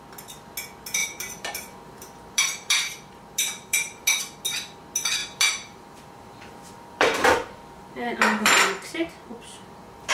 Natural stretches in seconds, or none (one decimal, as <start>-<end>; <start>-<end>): 0.0-1.0; 4.2-5.2